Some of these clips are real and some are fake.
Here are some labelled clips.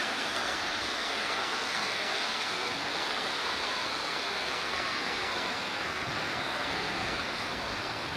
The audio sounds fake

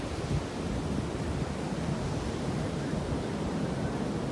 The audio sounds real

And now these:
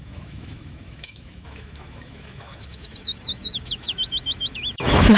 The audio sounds fake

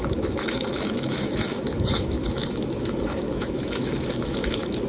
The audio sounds fake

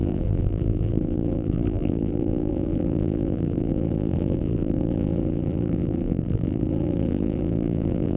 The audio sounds fake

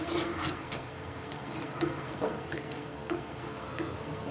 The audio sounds fake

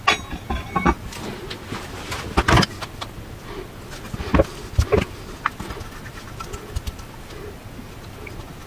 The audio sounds real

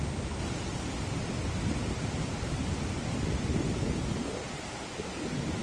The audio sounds real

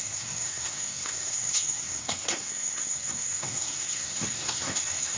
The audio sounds fake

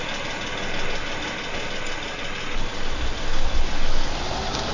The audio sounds real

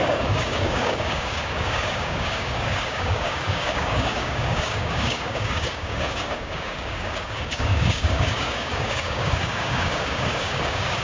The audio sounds fake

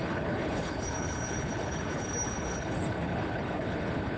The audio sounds fake